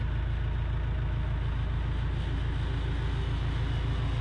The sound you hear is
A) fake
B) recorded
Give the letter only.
B